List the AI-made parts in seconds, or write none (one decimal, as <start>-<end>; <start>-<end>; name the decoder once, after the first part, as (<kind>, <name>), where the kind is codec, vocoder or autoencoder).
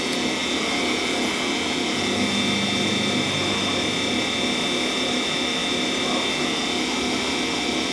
none